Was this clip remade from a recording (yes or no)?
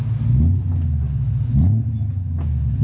no